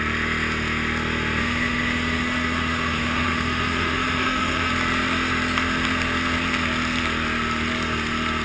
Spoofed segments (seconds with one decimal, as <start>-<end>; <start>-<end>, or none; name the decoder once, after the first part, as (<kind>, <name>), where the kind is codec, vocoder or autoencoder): 1.4-4.7 (autoencoder, DAC-VAE)